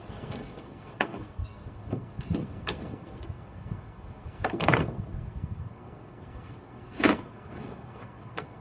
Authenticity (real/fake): fake